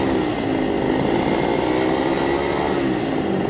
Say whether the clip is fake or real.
real